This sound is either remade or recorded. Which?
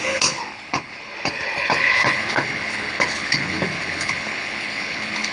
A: remade